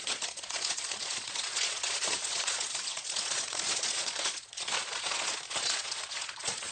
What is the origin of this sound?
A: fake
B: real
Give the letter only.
A